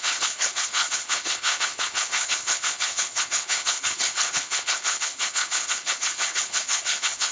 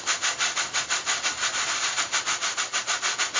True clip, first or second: second